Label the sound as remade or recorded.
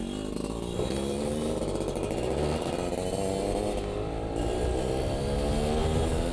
recorded